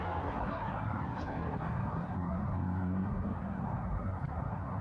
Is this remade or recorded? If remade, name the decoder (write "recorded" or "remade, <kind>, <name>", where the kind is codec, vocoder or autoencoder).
remade, codec, SNAC